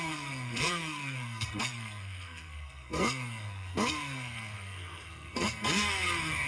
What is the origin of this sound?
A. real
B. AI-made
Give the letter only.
B